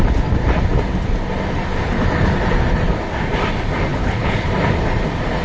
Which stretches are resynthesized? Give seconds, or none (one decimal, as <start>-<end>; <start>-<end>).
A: 3.9-4.5